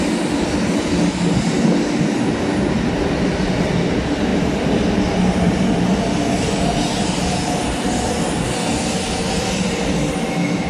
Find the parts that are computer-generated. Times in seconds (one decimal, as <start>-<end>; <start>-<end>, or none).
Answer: 4.3-5.8